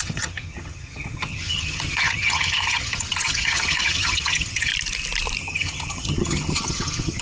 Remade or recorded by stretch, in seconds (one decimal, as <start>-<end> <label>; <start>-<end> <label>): 0.0-4.7 remade; 4.7-5.4 recorded; 5.4-7.2 remade